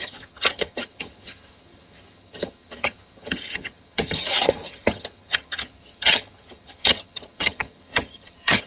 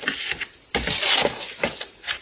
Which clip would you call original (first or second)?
second